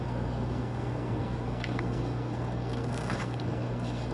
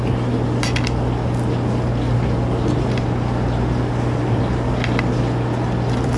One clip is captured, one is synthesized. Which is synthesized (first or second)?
first